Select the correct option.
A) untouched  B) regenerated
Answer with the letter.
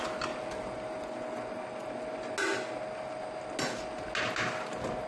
A